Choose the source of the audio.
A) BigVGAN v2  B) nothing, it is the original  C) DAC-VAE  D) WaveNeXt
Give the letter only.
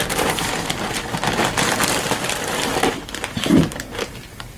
A